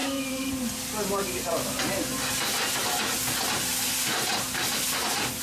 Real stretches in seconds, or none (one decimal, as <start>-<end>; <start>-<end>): 0.5-5.4